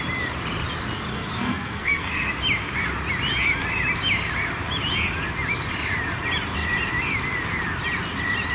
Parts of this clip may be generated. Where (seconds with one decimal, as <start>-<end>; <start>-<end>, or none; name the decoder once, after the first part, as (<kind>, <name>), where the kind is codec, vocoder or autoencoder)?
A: 1.1-2.3 (codec, SNAC)